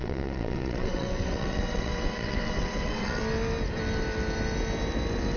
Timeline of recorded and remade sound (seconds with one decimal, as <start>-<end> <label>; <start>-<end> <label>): 0.0-3.2 remade; 3.2-5.4 recorded